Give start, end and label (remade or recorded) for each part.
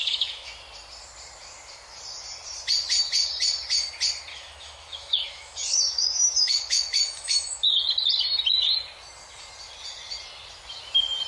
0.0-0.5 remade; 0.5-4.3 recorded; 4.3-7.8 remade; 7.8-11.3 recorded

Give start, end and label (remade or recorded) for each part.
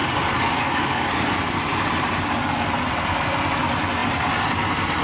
0.0-1.3 remade; 1.3-5.0 recorded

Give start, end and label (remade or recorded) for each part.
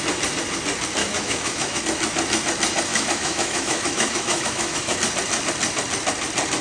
0.0-1.0 recorded; 1.0-1.8 remade; 1.8-2.9 recorded; 2.9-5.0 remade; 5.0-6.6 recorded